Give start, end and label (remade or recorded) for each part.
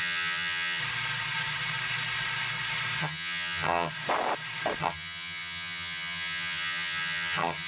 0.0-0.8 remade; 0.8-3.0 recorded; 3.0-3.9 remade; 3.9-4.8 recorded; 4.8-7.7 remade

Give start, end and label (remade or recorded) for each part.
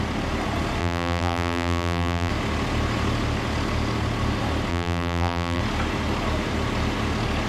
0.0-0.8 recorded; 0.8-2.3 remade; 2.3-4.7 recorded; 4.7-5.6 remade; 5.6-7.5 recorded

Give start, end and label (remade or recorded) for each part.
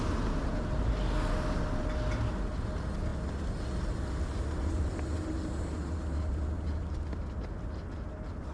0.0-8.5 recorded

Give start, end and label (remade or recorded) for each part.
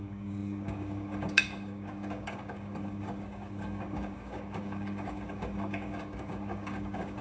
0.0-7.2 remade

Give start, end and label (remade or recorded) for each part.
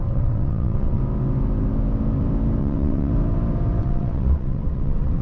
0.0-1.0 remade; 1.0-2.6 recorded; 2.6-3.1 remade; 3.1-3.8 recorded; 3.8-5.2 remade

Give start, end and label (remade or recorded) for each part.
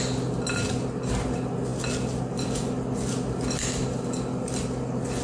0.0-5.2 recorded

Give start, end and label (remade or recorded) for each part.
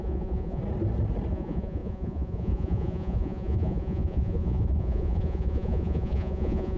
0.0-0.6 remade; 0.6-1.3 recorded; 1.3-6.8 remade